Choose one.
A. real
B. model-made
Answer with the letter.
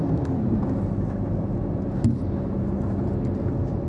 A